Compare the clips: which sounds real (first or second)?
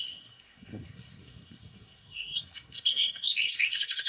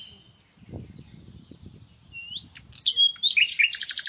second